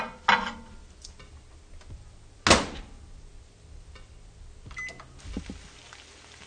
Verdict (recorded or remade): recorded